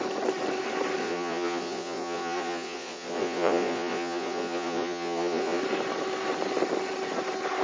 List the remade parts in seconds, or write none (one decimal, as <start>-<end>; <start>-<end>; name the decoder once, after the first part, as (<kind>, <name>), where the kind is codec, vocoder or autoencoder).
1.0-5.6 (vocoder, Vocos)

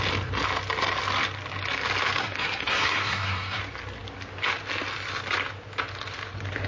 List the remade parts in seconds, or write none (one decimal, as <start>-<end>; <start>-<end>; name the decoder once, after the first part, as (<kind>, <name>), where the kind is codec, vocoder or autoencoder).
2.2-3.6 (codec, SNAC)

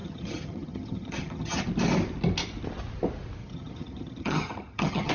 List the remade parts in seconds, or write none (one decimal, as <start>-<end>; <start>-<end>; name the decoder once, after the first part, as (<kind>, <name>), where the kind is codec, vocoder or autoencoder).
0.0-1.6 (vocoder, HiFi-GAN); 3.4-5.1

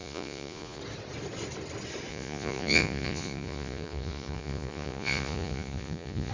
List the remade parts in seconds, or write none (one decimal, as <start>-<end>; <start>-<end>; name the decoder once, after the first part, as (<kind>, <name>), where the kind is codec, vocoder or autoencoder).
0.0-0.8 (vocoder, Vocos); 2.1-6.3

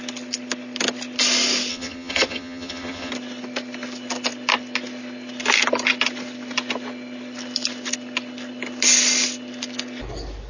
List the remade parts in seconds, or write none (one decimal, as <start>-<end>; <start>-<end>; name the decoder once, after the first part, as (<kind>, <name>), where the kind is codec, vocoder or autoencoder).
1.7-3.1 (vocoder, HiFi-GAN)

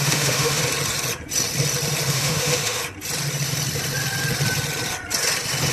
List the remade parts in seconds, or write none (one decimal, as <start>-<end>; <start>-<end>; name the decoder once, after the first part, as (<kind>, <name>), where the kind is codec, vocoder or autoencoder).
0.0-0.6 (autoencoder, DAC-VAE); 2.1-2.8

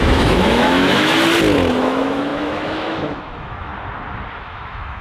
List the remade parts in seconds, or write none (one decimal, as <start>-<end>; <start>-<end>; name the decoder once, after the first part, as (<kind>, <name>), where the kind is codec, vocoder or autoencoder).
0.0-1.1 (autoencoder, DAC-VAE); 1.8-3.7; 4.3-5.0

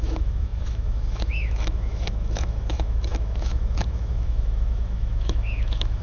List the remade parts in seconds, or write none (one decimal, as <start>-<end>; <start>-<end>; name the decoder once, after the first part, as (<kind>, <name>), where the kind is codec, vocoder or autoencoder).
0.0-6.0 (autoencoder, DAC-VAE)